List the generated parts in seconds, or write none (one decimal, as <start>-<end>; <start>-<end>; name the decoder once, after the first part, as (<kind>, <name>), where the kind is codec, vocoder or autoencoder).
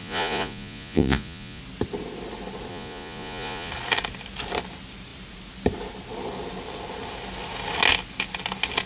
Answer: 0.0-1.6 (vocoder, Vocos); 2.7-3.7